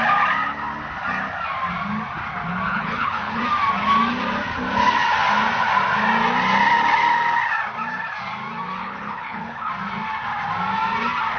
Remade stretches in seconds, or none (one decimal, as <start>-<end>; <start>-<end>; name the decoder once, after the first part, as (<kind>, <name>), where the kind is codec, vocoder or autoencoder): 2.7-3.4 (codec, HILCodec); 8.8-9.7